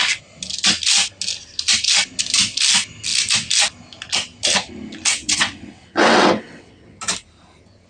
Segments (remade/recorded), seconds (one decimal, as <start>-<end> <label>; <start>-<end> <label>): 0.0-5.1 recorded; 5.1-7.0 remade; 7.0-7.9 recorded